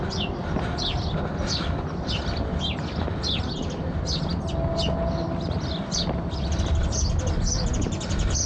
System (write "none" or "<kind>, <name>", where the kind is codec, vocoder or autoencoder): none